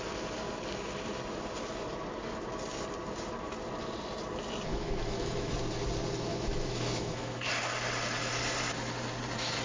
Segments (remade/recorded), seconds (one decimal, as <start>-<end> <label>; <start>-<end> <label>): 0.0-4.7 recorded; 4.7-5.5 remade; 5.5-6.3 recorded; 6.3-7.5 remade; 7.5-9.6 recorded